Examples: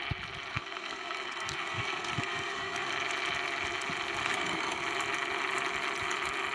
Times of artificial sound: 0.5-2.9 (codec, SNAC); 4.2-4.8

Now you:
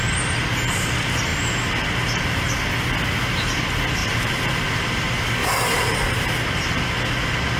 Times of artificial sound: 4.0-5.0 (vocoder, BigVGAN v2)

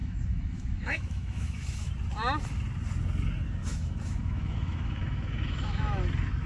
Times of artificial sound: 0.0-1.9 (autoencoder, DAC-VAE); 3.6-6.0

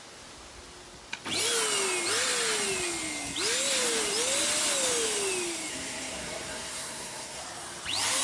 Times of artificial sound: 5.7-7.4 (codec, SNAC)

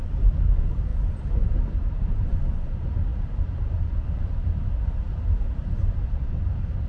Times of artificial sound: 0.0-0.9 (vocoder, BigVGAN v2); 1.8-3.1; 6.2-6.9

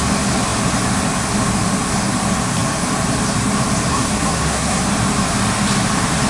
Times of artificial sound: 3.9-4.8 (codec, SNAC)

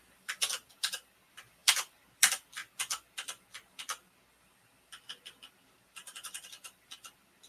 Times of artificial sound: 0.0-2.6 (vocoder, BigVGAN v2); 5.5-7.5